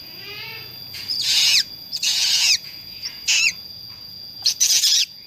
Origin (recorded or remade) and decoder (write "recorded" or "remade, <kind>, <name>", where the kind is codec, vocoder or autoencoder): remade, vocoder, Vocos